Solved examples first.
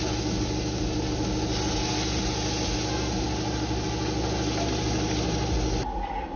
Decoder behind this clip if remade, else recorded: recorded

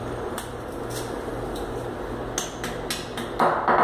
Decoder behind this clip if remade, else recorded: recorded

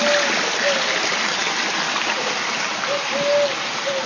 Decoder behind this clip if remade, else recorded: recorded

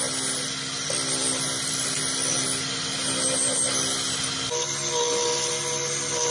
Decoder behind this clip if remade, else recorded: recorded